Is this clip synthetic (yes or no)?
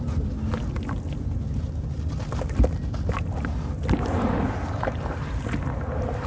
no